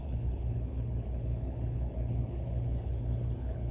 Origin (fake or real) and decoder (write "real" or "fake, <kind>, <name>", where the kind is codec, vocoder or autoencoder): fake, codec, HILCodec